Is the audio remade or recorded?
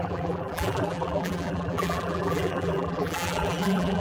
remade